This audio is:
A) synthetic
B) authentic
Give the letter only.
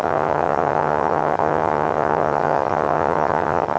A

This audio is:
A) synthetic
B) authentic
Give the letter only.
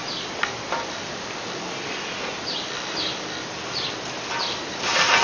B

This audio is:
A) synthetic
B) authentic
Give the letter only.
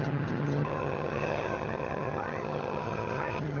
A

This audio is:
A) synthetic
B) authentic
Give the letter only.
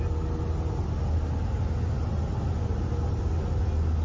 B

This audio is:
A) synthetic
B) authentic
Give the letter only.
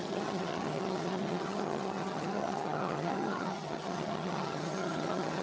A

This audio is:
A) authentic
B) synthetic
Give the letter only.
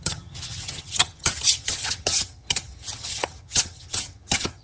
B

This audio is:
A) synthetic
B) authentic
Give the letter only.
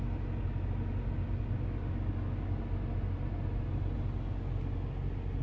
B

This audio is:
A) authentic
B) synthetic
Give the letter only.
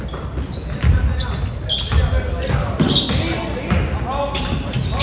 A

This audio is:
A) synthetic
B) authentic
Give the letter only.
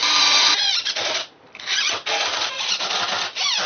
B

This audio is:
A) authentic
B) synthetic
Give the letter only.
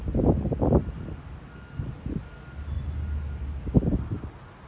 A